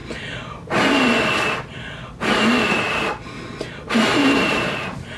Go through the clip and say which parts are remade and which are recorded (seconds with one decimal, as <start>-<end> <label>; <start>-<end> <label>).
0.0-4.1 recorded; 4.1-5.2 remade

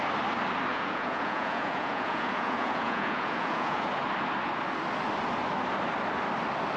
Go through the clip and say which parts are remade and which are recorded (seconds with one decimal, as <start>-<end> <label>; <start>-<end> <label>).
0.0-0.7 recorded; 0.7-3.9 remade; 3.9-6.8 recorded

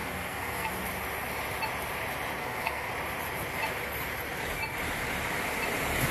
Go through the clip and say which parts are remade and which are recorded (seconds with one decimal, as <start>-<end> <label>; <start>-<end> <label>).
0.0-0.7 remade; 0.7-2.4 recorded; 2.4-2.9 remade; 2.9-6.1 recorded

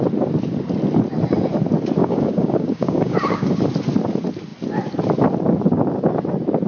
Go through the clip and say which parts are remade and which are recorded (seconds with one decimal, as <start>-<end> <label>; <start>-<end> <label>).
0.0-2.0 recorded; 2.0-3.5 remade; 3.5-6.7 recorded

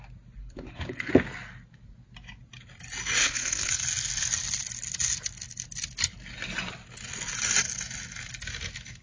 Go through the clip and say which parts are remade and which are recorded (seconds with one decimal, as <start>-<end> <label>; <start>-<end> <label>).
0.0-0.4 recorded; 0.4-1.1 remade; 1.1-3.2 recorded; 3.2-3.7 remade; 3.7-9.0 recorded

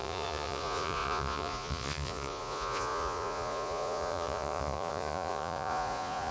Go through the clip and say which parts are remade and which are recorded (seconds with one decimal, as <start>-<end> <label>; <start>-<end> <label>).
0.0-6.3 remade

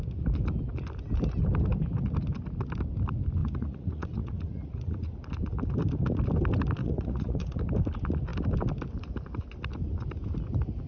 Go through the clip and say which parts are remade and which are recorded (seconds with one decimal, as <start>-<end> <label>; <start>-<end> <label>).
0.0-3.4 recorded; 3.4-5.1 remade; 5.1-6.8 recorded; 6.8-7.6 remade; 7.6-10.9 recorded

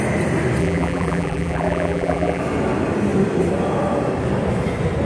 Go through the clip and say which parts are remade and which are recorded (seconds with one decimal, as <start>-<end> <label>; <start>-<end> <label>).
0.0-0.6 recorded; 0.6-2.4 remade; 2.4-5.1 recorded